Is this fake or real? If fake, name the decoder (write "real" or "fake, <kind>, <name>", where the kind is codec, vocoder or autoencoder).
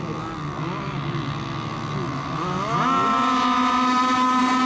real